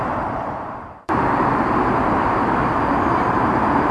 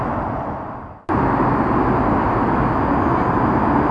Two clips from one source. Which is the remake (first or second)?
first